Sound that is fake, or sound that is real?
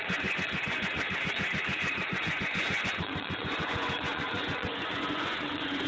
fake